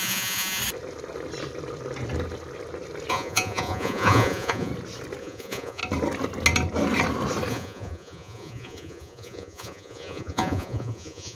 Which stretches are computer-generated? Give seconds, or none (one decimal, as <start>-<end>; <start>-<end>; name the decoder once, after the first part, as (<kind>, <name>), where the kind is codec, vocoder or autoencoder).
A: 0.0-0.6 (vocoder, Vocos); 3.1-4.7; 5.2-5.8; 7.5-11.4

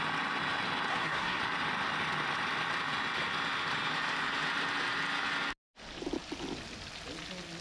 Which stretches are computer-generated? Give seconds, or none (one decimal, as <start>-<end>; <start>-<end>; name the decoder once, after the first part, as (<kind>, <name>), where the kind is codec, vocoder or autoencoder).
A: 0.9-1.4 (codec, SNAC)

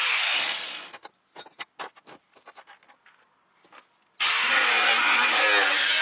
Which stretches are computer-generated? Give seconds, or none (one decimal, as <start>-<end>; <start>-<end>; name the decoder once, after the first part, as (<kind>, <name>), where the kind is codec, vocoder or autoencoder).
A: none

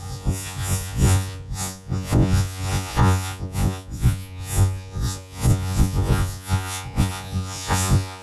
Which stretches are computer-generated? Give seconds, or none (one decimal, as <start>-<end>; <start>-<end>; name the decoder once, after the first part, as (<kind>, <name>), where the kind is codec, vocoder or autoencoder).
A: 0.0-8.2 (vocoder, Vocos)